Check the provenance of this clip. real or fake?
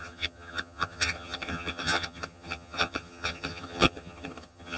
fake